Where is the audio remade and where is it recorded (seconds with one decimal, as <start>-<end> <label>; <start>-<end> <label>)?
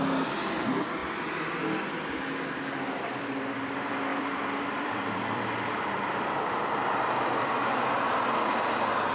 0.0-4.1 recorded; 4.1-8.3 remade; 8.3-9.1 recorded